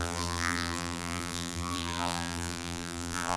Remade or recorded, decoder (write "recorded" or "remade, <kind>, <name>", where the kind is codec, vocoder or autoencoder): remade, vocoder, BigVGAN v2